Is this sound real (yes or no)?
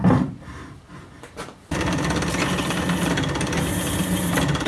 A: yes